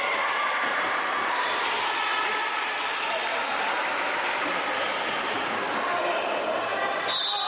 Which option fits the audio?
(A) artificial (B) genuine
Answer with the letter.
B